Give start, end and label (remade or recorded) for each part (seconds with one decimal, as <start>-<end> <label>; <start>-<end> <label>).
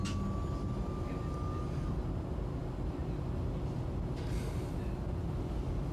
0.0-5.9 recorded